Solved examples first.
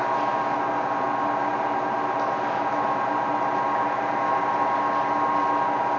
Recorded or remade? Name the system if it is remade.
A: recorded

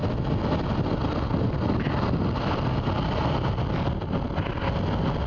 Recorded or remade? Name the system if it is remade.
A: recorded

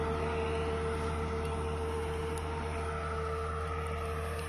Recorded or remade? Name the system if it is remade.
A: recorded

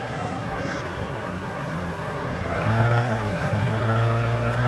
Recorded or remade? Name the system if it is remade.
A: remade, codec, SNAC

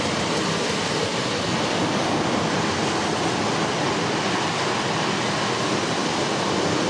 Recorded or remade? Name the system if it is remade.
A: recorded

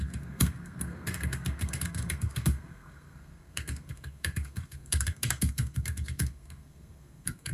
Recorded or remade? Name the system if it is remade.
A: remade, codec, SNAC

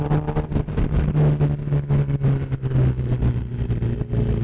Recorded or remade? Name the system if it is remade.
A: recorded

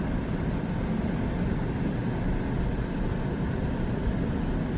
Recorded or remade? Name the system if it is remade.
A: recorded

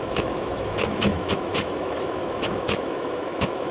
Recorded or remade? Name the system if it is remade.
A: remade, autoencoder, DAC-VAE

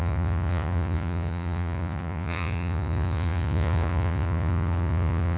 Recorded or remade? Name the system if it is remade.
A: remade, vocoder, Vocos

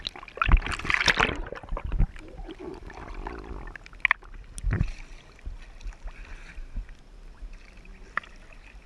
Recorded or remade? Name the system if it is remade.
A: recorded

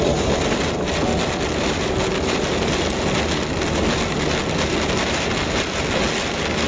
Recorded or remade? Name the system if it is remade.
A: recorded